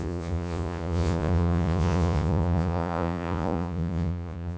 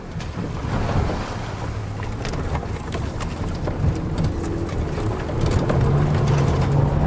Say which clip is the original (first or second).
second